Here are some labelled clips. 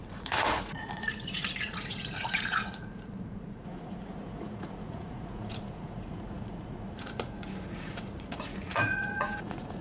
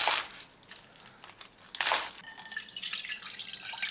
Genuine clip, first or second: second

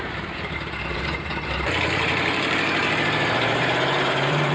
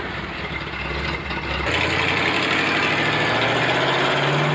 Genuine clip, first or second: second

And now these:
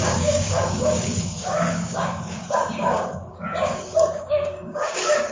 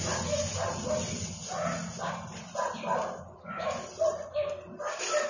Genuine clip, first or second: second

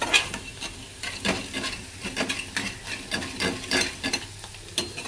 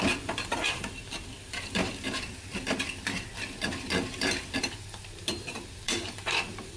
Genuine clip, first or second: first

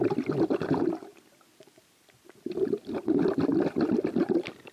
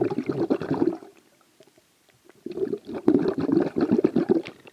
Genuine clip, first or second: first